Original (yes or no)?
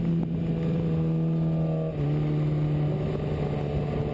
yes